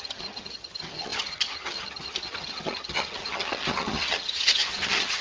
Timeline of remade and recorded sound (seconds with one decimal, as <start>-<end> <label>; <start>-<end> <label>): 0.0-5.2 remade